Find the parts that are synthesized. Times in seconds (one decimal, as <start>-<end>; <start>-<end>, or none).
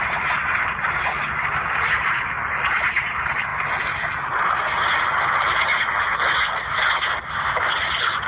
none